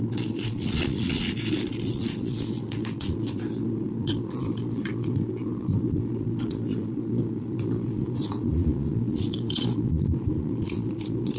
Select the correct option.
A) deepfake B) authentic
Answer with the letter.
A